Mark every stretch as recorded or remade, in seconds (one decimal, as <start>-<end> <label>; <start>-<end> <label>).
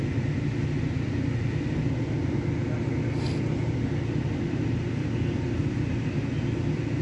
0.0-7.0 recorded